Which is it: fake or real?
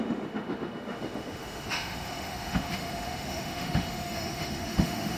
fake